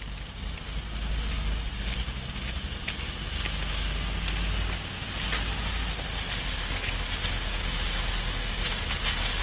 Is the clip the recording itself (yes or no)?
yes